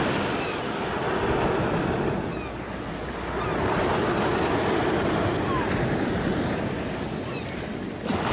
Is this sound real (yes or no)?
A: yes